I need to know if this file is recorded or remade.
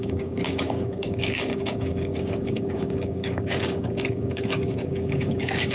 remade